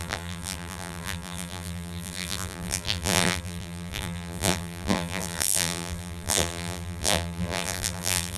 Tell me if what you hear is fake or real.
fake